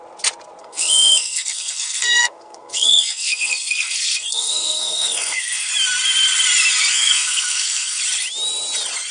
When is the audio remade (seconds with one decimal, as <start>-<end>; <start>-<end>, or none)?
0.6-5.7; 6.9-8.0